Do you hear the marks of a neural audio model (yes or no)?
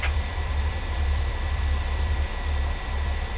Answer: yes